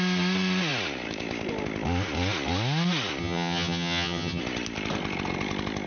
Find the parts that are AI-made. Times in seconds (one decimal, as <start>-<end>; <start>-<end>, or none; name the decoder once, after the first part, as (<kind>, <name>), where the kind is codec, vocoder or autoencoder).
3.2-4.4 (vocoder, HiFi-GAN)